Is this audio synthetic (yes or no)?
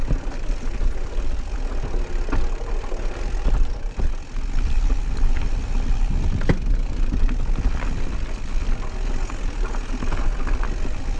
no